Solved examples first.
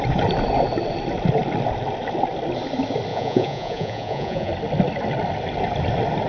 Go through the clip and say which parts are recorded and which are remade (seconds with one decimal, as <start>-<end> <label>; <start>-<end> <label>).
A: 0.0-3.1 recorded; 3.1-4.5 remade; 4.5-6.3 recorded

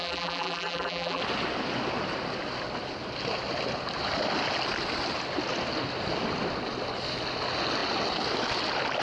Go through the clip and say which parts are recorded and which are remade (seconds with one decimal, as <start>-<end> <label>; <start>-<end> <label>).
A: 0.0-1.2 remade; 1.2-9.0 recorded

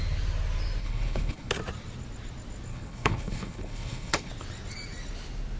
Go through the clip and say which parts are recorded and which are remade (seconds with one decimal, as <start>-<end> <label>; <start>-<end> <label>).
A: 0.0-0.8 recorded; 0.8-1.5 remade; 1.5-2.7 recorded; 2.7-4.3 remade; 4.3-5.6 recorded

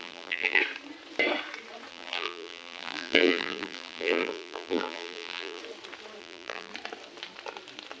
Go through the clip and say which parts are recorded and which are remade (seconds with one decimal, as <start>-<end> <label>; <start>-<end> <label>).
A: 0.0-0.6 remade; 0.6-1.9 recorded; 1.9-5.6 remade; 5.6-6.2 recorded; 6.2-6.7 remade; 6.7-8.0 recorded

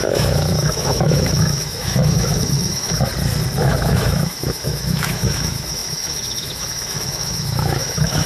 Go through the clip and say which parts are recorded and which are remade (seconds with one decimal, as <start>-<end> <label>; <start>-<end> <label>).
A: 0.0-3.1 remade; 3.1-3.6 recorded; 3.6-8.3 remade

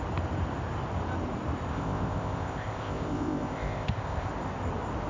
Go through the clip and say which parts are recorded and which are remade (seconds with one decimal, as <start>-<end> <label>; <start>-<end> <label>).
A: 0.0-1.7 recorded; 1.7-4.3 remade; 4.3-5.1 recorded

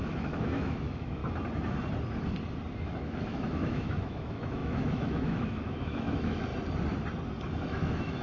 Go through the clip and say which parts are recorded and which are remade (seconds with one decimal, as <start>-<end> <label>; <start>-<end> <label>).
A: 0.0-1.2 remade; 1.2-2.8 recorded; 2.8-6.5 remade; 6.5-7.5 recorded; 7.5-8.2 remade

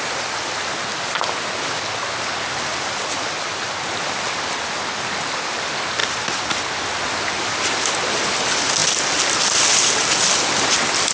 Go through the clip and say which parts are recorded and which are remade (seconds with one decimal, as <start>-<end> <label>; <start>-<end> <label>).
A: 0.0-11.1 recorded